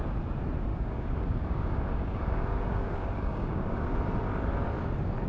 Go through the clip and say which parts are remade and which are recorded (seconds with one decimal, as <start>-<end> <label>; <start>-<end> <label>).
0.0-0.7 recorded; 0.7-3.9 remade; 3.9-5.3 recorded

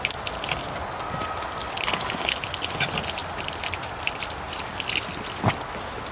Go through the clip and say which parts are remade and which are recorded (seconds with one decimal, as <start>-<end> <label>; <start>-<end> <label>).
0.0-3.2 recorded; 3.2-4.1 remade; 4.1-6.1 recorded

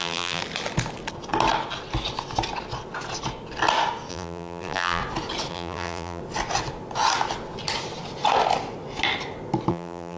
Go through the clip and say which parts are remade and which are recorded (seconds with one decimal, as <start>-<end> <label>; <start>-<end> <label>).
0.0-0.4 remade; 0.4-4.1 recorded; 4.1-5.0 remade; 5.0-5.5 recorded; 5.5-6.2 remade; 6.2-9.7 recorded; 9.7-10.2 remade

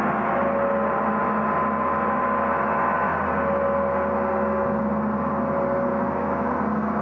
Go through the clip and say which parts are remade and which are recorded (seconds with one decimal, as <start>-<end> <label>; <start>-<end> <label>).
0.0-5.9 recorded; 5.9-6.5 remade; 6.5-7.0 recorded

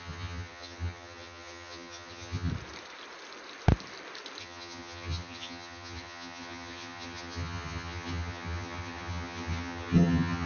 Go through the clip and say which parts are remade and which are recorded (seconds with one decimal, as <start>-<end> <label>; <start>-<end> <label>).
0.0-2.5 remade; 2.5-4.4 recorded; 4.4-10.5 remade

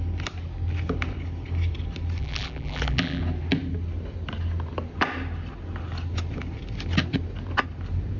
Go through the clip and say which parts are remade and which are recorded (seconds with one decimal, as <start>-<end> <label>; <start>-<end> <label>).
0.0-2.2 recorded; 2.2-3.2 remade; 3.2-8.2 recorded

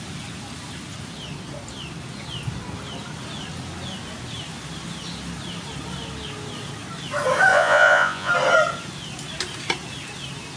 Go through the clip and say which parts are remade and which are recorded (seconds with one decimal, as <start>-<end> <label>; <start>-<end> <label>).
0.0-7.5 recorded; 7.5-8.3 remade; 8.3-10.6 recorded

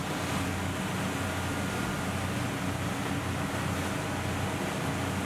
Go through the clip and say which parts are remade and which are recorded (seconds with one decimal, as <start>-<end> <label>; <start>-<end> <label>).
0.0-5.3 recorded